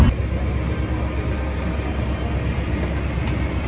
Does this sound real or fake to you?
real